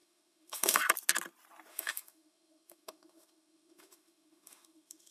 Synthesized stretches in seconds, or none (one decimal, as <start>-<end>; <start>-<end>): 0.0-0.8; 1.7-5.1